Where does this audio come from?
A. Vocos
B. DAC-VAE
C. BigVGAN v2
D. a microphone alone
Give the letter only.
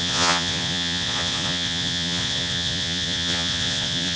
A